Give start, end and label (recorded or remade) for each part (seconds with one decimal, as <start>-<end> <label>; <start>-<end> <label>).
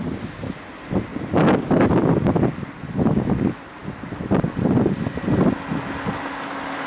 0.0-6.9 recorded